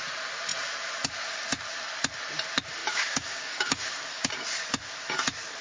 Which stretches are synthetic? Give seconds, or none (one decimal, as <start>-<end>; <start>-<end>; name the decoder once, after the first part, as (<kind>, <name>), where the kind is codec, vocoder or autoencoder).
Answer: 2.8-4.3 (codec, DAC)